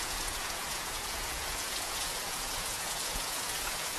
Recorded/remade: remade